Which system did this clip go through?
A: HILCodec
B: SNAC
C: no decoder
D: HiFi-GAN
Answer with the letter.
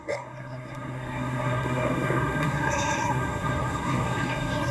B